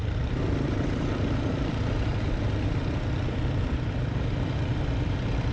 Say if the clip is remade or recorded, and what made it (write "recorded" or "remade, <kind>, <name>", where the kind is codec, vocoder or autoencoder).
remade, vocoder, BigVGAN v2